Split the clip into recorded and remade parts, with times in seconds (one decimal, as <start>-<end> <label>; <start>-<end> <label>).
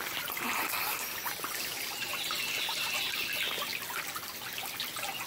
0.0-5.3 recorded